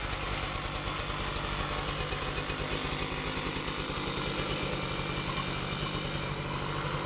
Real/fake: real